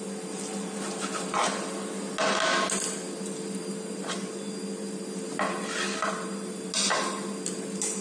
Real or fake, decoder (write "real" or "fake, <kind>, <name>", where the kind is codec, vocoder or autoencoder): real